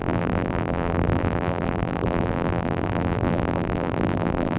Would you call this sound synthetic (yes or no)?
yes